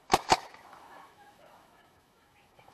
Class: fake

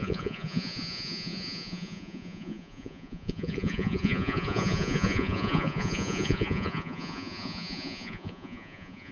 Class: fake